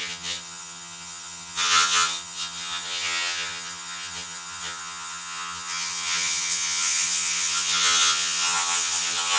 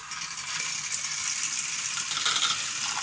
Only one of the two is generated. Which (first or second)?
first